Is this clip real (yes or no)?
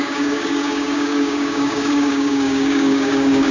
no